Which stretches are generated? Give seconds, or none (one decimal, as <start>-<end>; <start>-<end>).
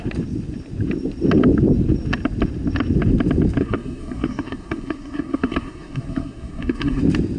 3.6-7.0